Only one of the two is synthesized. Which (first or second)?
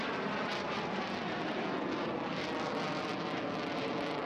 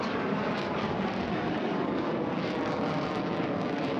second